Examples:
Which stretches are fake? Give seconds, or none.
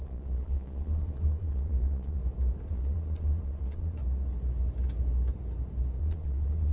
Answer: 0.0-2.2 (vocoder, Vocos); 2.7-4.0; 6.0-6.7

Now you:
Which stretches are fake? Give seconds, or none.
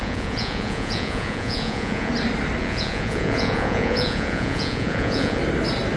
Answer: 0.0-2.1 (vocoder, Vocos); 2.6-5.4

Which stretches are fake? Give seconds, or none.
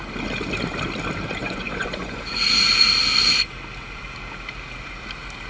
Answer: 1.4-2.2 (vocoder, Vocos)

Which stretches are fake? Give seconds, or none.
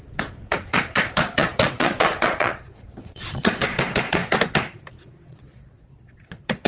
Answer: 0.0-4.2 (vocoder, Vocos); 4.9-6.7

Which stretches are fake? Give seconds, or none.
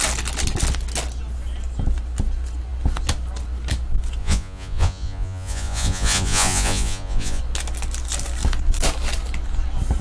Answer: 4.2-7.4 (vocoder, Vocos)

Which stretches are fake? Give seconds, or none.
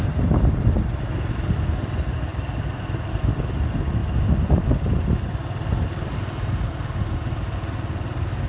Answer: none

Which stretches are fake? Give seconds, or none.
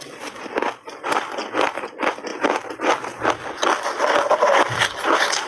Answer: none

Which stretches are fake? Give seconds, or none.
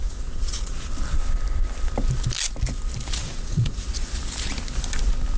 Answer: 0.0-0.9 (vocoder, Vocos); 3.2-4.2